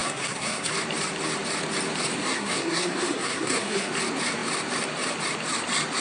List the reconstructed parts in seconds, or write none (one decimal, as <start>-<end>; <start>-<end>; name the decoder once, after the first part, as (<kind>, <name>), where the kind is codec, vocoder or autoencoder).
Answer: 0.0-0.7 (codec, SNAC); 2.2-3.9